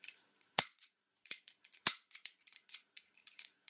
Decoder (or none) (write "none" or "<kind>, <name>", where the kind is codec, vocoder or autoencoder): vocoder, Vocos